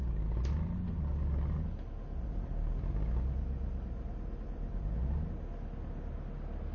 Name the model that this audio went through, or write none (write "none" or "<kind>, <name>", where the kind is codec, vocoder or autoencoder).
none